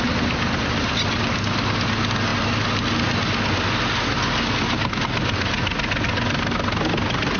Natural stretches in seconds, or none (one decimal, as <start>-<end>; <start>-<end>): 0.0-7.4